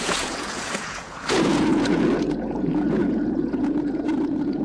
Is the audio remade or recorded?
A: remade